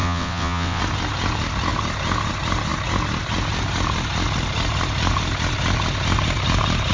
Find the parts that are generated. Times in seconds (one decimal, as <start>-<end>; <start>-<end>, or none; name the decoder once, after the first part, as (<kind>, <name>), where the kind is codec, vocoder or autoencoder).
0.0-0.8 (vocoder, WaveNeXt)